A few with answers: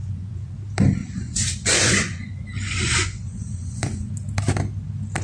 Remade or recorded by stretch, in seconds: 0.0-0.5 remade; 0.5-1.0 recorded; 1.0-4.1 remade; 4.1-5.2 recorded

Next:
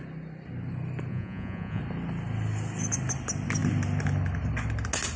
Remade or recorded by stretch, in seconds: 0.0-1.1 recorded; 1.1-1.8 remade; 1.8-5.2 recorded

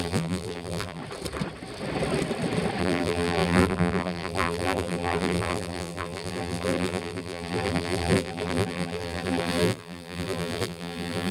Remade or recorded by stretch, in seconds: 0.0-1.0 remade; 1.0-2.8 recorded; 2.8-11.3 remade

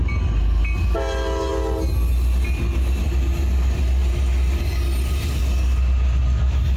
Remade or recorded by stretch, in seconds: 0.0-6.8 recorded

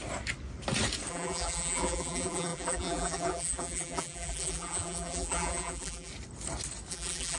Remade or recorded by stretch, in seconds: 0.0-1.1 recorded; 1.1-6.1 remade; 6.1-6.9 recorded; 6.9-7.4 remade